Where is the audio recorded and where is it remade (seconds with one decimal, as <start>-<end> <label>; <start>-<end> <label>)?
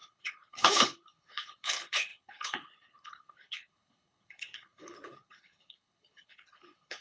0.0-7.0 remade